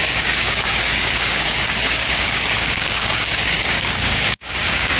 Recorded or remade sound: remade